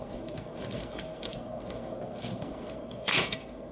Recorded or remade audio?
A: remade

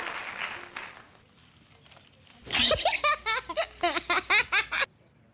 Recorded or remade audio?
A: recorded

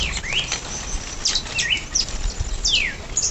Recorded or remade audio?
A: recorded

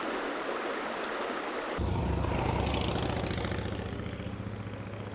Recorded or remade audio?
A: recorded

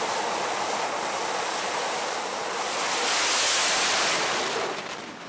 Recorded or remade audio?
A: recorded